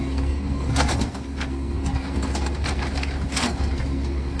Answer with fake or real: fake